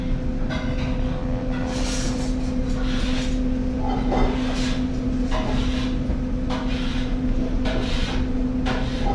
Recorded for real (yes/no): yes